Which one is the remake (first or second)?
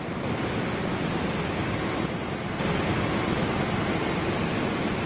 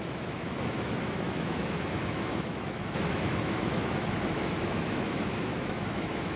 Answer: second